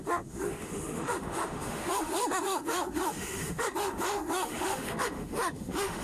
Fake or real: fake